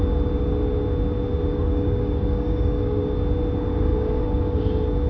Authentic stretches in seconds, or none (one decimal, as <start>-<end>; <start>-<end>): 0.0-1.5; 3.0-3.9; 4.6-5.1